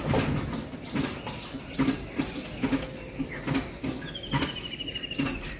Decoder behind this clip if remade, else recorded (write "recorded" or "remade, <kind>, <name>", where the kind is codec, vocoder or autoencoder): recorded